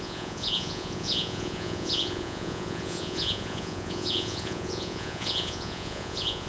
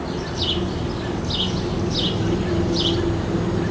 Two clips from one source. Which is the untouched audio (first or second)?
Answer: second